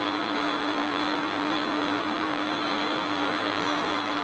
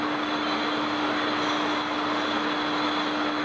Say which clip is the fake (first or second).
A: first